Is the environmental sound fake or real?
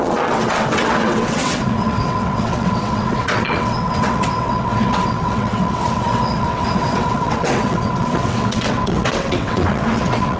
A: fake